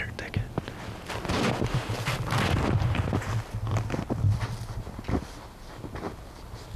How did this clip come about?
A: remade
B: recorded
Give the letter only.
B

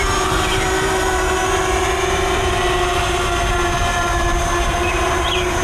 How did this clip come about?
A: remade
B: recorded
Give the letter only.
A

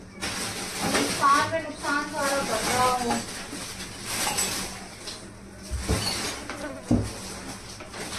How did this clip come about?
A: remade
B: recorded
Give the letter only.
B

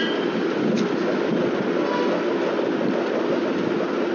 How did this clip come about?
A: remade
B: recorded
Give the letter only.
B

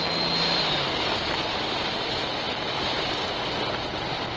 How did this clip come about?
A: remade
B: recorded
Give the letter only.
B